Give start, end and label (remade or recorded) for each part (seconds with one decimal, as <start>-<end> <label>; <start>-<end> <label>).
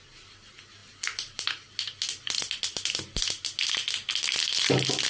0.0-5.1 recorded